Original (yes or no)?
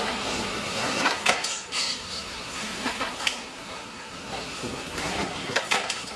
no